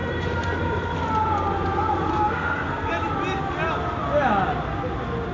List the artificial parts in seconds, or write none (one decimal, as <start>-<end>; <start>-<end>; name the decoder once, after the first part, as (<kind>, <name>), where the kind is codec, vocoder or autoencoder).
2.1-2.9 (codec, SNAC)